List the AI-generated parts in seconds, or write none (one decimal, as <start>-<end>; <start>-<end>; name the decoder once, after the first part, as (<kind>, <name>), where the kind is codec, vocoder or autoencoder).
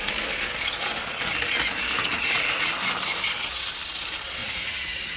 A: 2.1-2.8 (vocoder, Vocos); 4.4-5.2